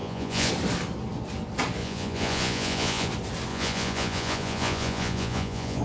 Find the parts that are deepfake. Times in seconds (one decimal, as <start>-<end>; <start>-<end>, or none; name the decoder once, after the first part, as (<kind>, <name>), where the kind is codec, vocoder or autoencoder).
0.0-0.5 (vocoder, Vocos); 1.8-3.1; 3.5-5.8